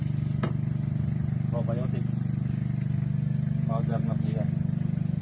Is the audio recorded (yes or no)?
yes